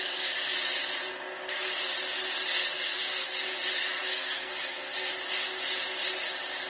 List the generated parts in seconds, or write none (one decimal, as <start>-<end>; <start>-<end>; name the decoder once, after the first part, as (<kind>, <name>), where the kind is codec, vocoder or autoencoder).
2.9-3.4 (codec, SNAC); 4.1-5.1

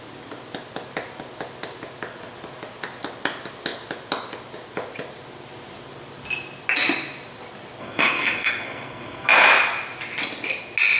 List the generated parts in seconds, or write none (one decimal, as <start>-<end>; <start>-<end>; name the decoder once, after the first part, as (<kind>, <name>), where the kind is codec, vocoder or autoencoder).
7.8-9.3 (codec, SNAC)

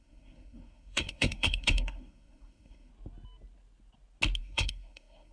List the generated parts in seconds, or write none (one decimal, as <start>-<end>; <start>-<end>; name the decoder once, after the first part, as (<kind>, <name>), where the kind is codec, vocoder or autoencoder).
0.0-2.9 (codec, SNAC); 4.4-5.3

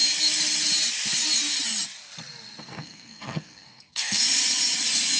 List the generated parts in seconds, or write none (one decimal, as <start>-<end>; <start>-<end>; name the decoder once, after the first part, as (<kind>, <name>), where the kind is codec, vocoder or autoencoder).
2.6-4.2 (codec, SNAC)

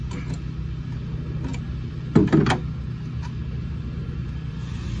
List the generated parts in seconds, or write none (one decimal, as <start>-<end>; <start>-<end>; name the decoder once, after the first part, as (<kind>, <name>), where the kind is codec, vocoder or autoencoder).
none